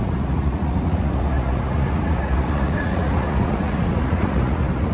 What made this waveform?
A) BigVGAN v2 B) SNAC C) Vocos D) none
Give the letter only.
C